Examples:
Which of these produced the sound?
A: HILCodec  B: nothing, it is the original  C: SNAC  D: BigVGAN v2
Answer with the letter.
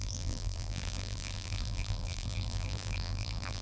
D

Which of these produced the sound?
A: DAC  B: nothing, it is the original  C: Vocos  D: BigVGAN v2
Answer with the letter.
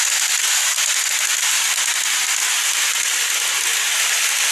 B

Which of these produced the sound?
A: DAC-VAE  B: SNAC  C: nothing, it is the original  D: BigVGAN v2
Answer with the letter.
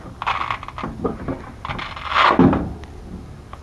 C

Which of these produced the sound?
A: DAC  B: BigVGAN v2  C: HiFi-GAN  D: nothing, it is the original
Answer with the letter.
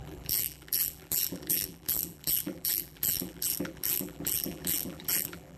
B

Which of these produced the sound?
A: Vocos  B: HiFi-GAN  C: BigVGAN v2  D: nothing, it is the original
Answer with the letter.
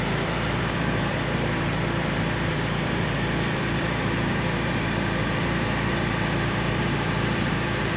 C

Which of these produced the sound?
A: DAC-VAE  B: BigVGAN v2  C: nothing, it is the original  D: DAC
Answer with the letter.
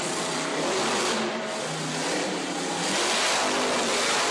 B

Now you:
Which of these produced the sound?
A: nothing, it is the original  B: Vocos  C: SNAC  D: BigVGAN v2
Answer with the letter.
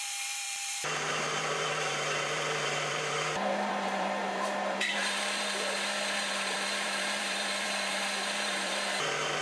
D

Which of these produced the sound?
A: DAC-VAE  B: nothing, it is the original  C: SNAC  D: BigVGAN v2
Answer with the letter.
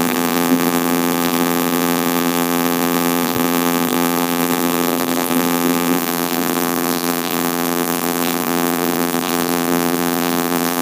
D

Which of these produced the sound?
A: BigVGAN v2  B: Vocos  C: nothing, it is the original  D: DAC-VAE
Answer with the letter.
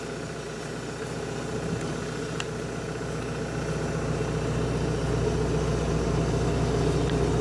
C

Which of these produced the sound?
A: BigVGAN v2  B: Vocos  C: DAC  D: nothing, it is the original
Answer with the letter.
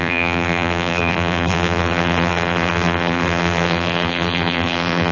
A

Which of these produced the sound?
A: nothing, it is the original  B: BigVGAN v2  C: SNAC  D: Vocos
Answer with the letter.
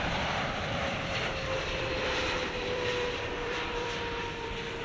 B